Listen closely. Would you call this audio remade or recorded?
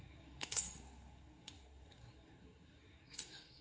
remade